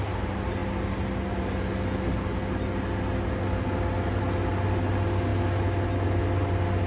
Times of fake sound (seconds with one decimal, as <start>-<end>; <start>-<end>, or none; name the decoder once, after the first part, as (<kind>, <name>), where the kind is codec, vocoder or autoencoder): none